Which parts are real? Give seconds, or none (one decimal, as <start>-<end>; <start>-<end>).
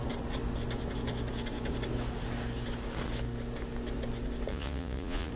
0.0-4.5